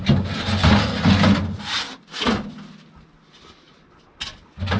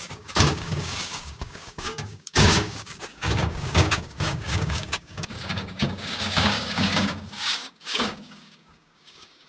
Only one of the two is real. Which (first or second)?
first